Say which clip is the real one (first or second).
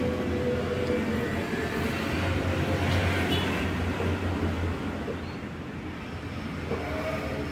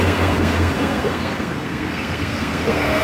first